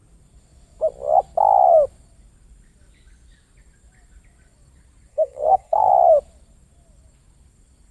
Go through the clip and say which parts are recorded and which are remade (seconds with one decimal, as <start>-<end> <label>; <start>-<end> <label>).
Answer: 0.0-5.1 recorded; 5.1-5.9 remade; 5.9-7.9 recorded